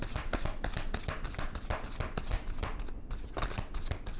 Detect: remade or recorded recorded